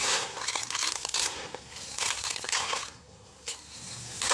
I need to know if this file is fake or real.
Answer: fake